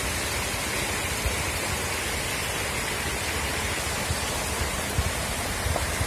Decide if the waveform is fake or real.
real